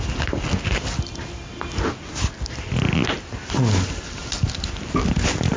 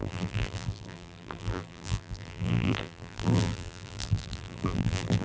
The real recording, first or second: first